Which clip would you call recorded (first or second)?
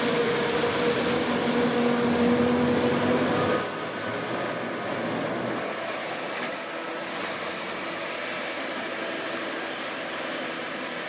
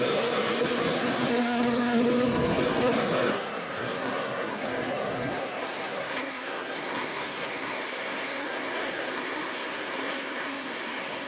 first